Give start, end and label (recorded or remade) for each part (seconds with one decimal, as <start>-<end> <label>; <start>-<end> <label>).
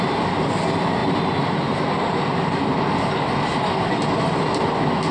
0.0-5.1 recorded